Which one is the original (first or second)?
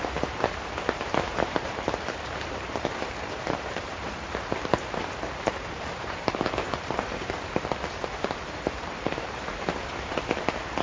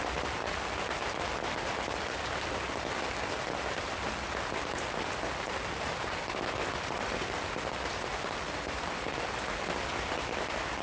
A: second